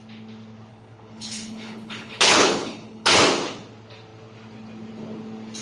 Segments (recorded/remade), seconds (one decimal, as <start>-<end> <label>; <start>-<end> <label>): 0.0-0.7 recorded; 0.7-3.1 remade; 3.1-5.6 recorded